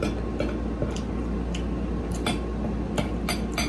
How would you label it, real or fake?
real